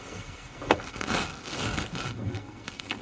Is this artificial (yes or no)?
yes